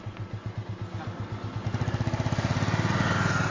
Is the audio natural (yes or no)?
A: yes